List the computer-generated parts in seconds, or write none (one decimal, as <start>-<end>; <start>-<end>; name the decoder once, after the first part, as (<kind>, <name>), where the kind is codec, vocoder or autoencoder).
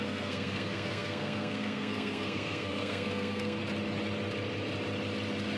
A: 0.0-3.6 (codec, SNAC)